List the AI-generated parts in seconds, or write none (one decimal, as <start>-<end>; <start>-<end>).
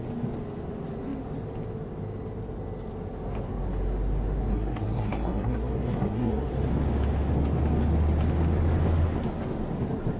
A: 4.5-6.5